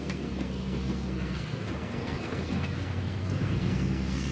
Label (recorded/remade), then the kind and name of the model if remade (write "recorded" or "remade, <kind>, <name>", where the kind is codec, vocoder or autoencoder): remade, codec, SNAC